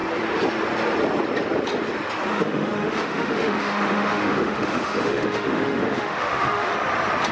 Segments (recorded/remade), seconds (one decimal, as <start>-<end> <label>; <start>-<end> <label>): 0.0-2.3 recorded; 2.3-6.7 remade; 6.7-7.3 recorded